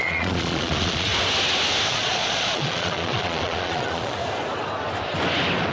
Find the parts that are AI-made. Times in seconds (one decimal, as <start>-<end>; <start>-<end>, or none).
0.0-1.1; 1.9-4.2